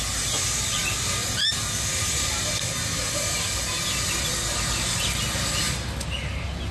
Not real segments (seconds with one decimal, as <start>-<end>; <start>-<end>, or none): none